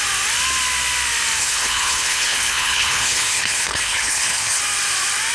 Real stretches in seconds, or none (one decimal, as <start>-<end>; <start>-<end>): 0.0-1.4; 4.6-5.3